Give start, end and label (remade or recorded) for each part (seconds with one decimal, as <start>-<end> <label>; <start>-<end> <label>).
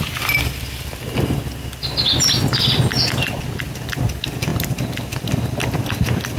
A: 0.0-6.4 recorded